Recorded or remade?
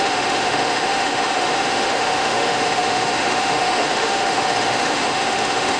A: remade